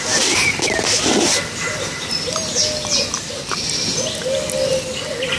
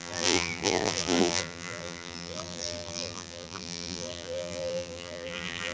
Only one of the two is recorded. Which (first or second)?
first